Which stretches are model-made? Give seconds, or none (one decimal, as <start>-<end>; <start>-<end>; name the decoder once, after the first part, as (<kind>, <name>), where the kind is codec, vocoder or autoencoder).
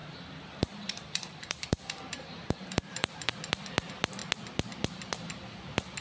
0.0-3.3 (vocoder, BigVGAN v2)